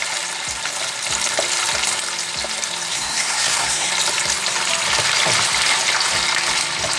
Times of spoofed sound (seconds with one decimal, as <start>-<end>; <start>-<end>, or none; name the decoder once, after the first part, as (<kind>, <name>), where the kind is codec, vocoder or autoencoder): 2.9-3.9 (codec, SNAC)